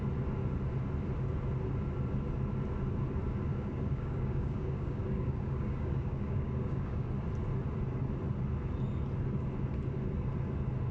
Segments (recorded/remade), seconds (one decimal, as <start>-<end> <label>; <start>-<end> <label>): 0.0-3.5 recorded; 3.5-7.1 remade; 7.1-10.9 recorded